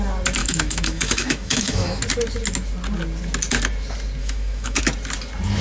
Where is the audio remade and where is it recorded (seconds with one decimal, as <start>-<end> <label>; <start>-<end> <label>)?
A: 0.0-0.4 recorded; 0.4-2.0 remade; 2.0-4.2 recorded; 4.2-4.8 remade; 4.8-5.6 recorded